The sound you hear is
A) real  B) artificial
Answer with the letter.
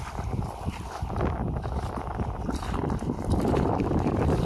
A